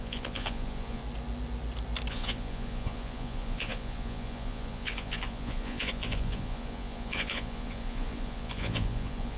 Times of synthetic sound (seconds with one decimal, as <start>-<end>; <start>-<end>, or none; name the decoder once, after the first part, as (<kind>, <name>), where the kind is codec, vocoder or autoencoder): 0.0-1.0 (vocoder, Vocos); 2.1-9.4